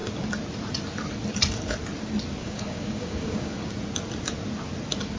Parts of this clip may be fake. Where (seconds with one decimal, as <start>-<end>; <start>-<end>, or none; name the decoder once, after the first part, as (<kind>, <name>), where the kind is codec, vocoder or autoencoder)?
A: 2.4-3.7 (codec, DAC)